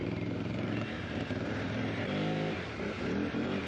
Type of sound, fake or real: fake